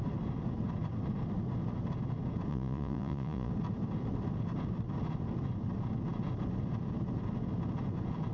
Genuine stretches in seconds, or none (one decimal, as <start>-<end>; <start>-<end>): 0.0-2.5; 3.5-8.3